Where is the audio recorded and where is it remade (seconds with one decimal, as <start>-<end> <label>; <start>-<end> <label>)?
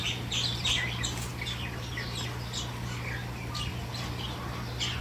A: 0.0-5.0 recorded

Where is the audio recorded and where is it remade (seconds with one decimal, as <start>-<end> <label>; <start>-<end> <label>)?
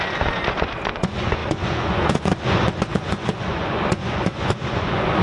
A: 0.0-5.2 remade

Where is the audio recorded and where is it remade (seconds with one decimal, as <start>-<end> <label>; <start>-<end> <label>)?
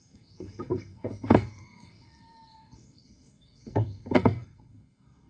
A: 0.0-5.3 remade